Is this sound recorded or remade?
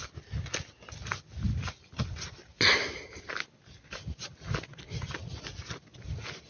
recorded